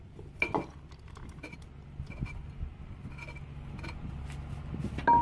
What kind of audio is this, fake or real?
real